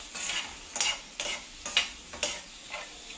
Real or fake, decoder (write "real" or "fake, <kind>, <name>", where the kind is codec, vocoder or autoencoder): real